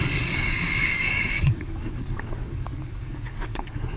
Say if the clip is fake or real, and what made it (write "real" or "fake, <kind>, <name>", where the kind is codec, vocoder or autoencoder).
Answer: fake, codec, DAC